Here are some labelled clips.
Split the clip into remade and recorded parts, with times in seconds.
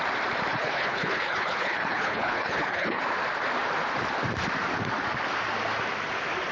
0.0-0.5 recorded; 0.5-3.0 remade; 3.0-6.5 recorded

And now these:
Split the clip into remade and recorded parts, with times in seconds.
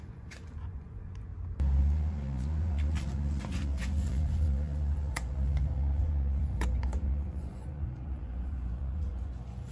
0.0-1.3 remade; 1.3-1.8 recorded; 1.8-9.7 remade